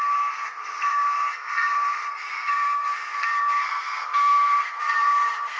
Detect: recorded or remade remade